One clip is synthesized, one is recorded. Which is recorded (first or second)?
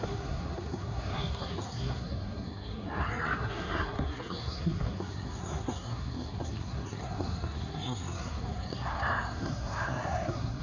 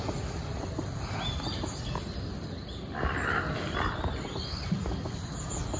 second